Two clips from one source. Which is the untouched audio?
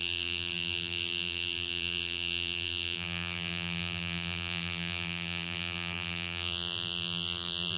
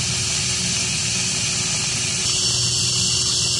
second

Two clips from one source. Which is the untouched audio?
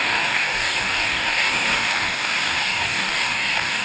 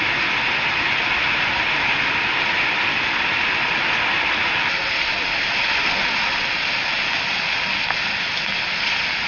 second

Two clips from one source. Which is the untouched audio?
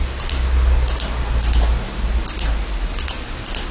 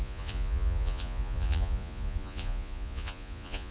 first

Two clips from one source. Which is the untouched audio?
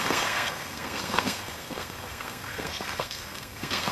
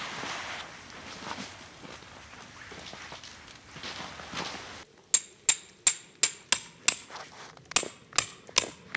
second